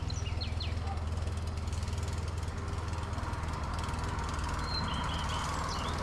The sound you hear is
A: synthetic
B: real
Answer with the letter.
B